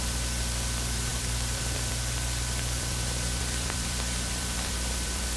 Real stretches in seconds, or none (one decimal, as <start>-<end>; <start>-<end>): none